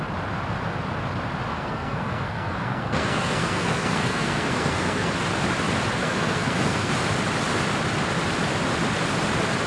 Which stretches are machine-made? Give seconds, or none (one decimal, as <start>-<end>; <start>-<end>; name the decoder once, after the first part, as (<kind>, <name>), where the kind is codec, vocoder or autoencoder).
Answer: 1.5-5.1 (codec, SNAC); 6.0-6.9